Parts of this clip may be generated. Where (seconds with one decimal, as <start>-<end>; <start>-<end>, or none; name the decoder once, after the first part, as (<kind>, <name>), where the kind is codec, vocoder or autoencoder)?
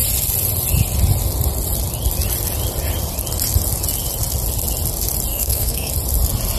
5.3-5.9 (codec, SNAC)